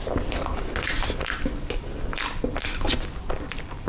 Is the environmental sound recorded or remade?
recorded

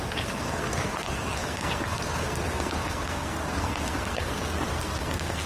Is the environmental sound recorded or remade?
remade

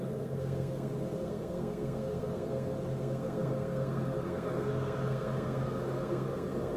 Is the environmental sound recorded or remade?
remade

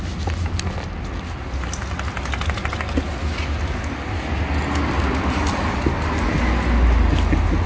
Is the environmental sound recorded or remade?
recorded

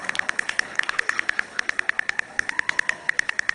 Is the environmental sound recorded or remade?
remade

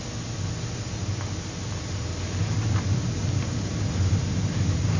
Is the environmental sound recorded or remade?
recorded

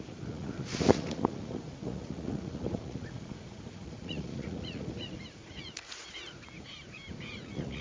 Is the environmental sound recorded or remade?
remade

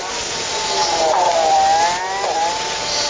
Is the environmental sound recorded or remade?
recorded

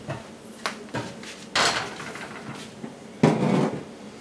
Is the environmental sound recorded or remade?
recorded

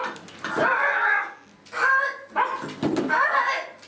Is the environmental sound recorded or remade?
recorded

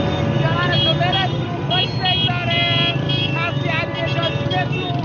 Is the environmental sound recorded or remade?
recorded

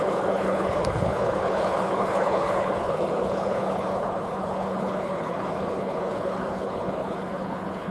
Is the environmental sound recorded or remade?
remade